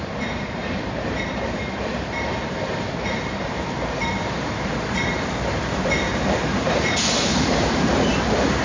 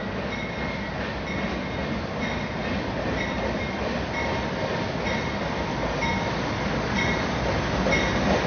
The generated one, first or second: first